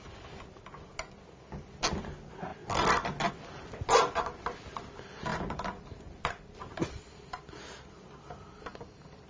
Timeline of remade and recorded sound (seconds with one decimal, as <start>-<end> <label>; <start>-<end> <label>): 0.0-5.3 recorded; 5.3-7.4 remade; 7.4-9.3 recorded